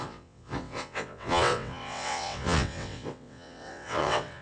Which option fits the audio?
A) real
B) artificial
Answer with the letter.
B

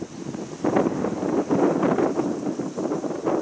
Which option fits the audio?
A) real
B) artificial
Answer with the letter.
A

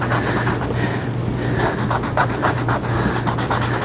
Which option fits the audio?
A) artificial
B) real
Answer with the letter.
B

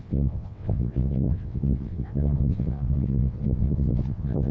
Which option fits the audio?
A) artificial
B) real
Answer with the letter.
A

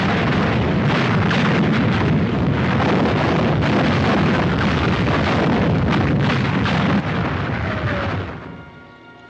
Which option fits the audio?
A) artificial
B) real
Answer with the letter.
B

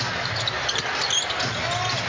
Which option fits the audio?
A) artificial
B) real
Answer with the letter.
B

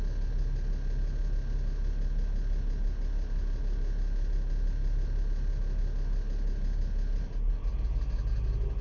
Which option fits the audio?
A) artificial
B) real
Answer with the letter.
B